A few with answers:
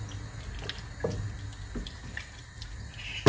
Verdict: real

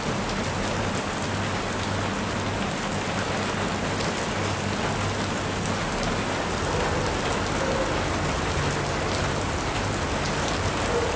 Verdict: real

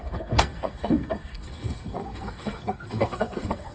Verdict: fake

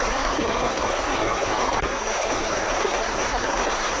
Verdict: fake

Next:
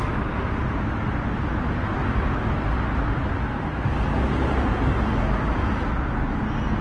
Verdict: real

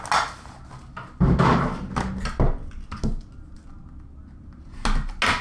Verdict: real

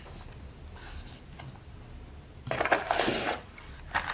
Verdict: real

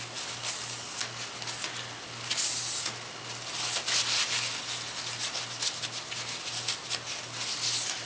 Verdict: real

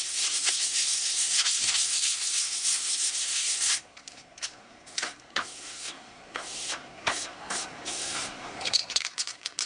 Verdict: fake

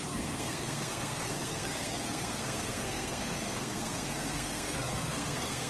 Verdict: fake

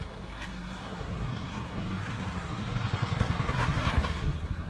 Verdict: fake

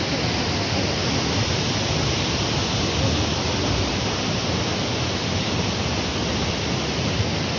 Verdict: real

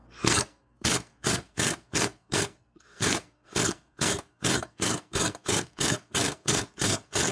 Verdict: fake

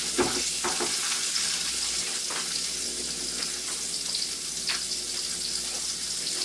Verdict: real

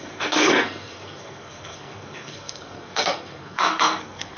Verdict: fake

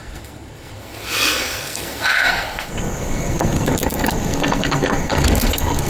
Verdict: fake